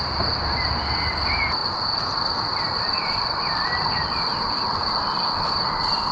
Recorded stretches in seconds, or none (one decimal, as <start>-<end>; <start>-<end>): 0.0-1.6; 4.5-6.1